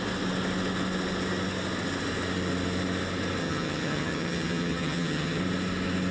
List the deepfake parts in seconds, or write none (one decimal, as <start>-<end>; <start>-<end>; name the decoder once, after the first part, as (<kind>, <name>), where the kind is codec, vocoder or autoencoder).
3.4-5.4 (vocoder, HiFi-GAN)